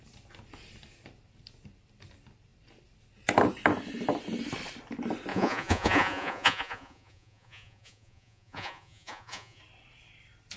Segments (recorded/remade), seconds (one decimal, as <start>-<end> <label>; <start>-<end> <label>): 0.0-5.3 recorded; 5.3-9.6 remade; 9.6-10.6 recorded